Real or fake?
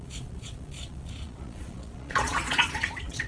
fake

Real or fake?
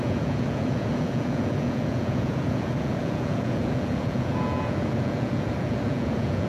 fake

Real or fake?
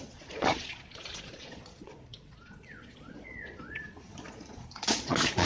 fake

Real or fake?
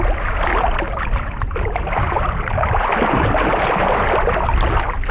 real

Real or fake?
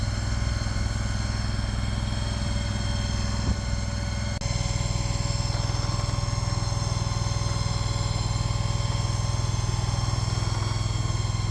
real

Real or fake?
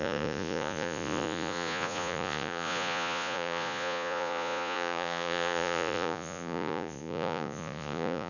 fake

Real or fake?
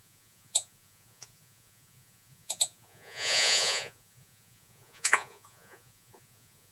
fake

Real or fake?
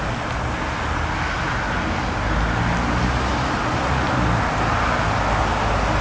real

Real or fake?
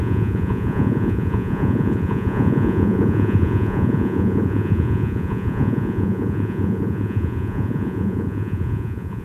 fake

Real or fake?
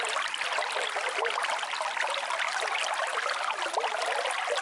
real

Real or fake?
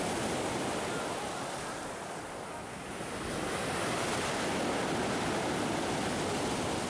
real